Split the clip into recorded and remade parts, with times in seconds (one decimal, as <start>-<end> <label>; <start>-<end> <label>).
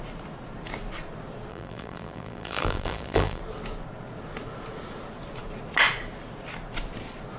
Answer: 0.0-1.5 recorded; 1.5-3.4 remade; 3.4-7.4 recorded